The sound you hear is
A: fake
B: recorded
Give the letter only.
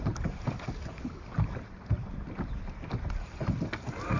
A